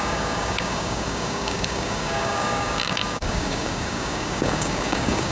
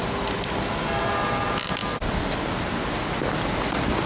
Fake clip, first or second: first